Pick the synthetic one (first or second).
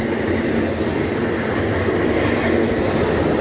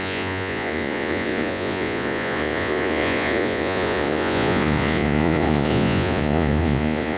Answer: second